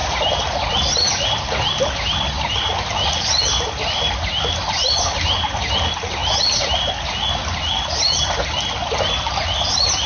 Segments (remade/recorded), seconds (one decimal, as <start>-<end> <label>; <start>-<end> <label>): 0.0-10.1 recorded